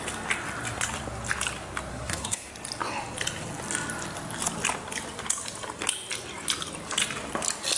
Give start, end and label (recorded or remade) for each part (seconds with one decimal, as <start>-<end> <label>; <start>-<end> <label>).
0.0-1.9 recorded; 1.9-2.5 remade; 2.5-7.8 recorded